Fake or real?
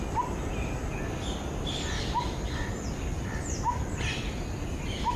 real